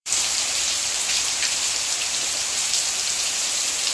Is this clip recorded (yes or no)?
no